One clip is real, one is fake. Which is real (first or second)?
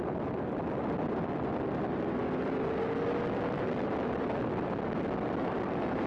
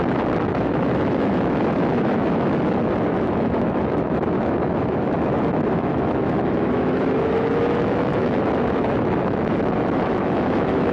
first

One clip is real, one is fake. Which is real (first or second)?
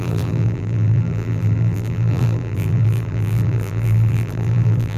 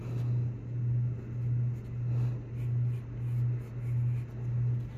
second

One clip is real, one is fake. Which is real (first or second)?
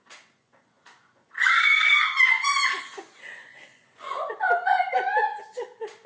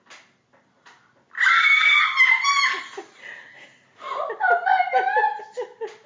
second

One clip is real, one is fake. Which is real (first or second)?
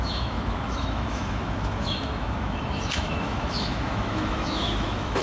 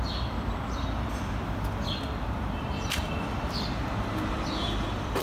second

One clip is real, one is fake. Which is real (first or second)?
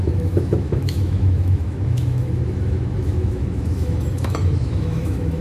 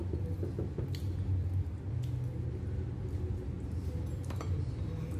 second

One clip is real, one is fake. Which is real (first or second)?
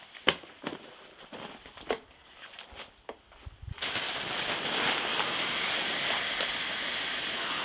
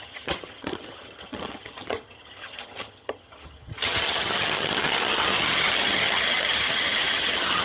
first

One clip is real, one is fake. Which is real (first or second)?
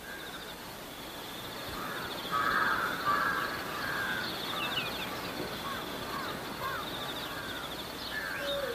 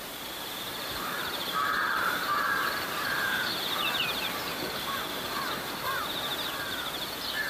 first